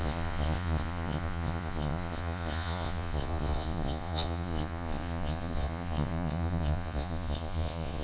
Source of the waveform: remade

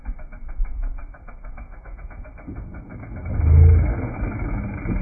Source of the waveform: remade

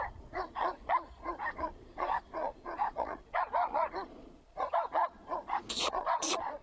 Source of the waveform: remade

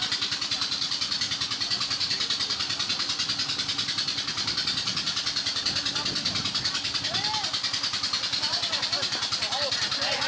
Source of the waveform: recorded